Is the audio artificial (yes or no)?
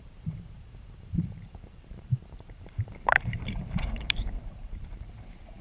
yes